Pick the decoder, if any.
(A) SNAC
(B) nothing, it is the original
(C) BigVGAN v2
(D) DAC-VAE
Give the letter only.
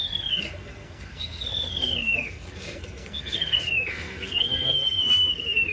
A